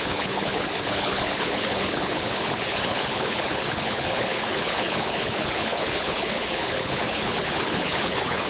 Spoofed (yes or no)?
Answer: yes